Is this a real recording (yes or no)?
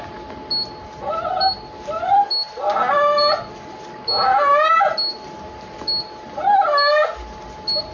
yes